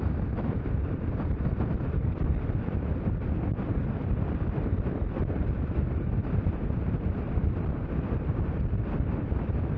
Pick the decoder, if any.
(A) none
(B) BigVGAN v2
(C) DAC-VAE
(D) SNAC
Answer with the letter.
B